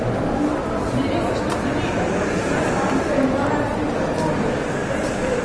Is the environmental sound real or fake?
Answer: real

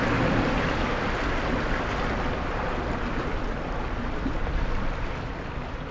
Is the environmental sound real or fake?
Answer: real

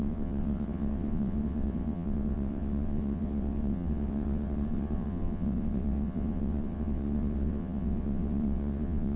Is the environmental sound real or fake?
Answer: fake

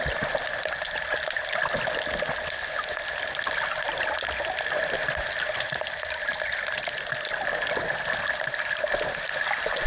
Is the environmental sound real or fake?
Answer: real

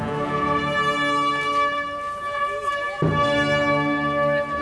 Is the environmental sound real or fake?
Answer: real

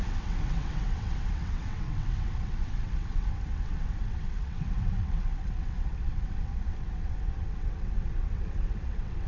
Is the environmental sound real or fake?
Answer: fake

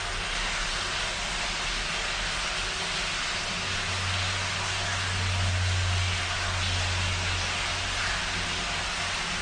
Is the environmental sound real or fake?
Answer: real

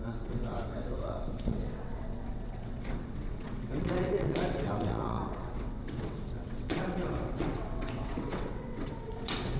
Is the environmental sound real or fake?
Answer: fake